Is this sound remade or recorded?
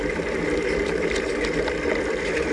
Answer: remade